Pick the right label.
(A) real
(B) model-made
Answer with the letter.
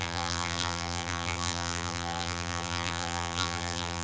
B